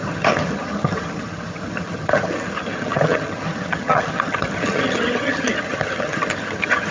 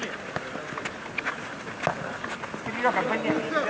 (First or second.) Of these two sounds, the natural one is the second